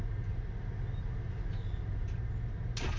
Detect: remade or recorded recorded